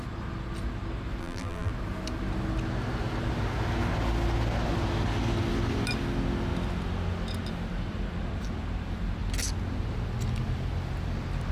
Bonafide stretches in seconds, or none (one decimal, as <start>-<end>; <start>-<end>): 0.0-1.2; 1.7-11.5